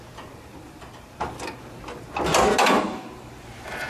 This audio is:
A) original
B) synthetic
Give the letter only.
A